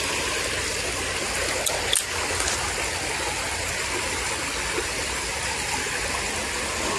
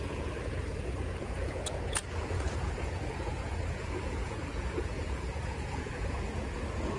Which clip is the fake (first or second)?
second